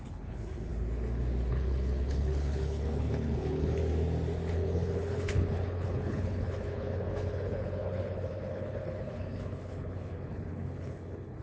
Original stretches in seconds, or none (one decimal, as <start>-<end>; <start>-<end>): 0.7-1.5; 3.8-4.5